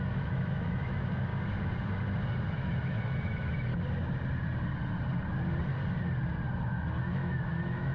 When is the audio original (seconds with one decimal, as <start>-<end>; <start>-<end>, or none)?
1.3-2.5; 3.7-7.0